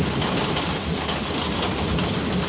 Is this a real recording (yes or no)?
yes